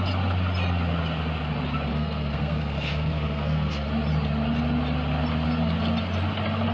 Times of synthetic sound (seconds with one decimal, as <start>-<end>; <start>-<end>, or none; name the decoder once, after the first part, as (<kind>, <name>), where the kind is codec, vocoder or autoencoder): 1.9-3.9 (codec, SNAC)